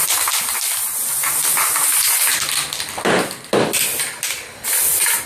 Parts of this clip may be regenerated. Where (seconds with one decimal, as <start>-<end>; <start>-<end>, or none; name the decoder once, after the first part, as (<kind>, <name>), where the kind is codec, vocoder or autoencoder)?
none